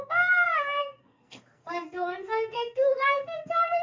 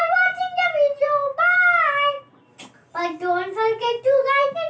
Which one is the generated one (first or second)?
first